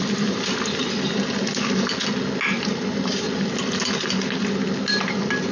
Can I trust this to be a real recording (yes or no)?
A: yes